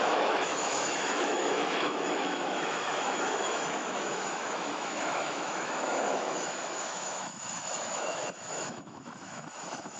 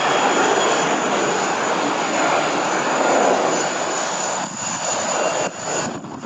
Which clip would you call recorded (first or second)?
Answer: second